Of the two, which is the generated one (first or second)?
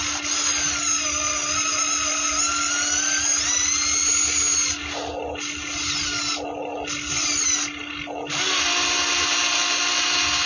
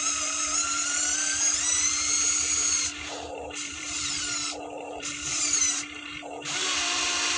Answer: second